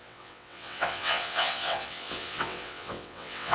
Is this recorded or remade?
remade